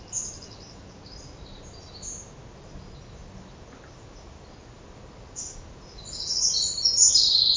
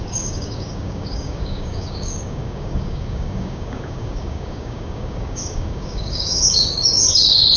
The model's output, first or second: second